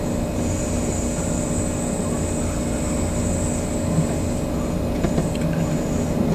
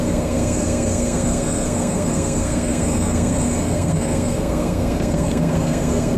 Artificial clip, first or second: second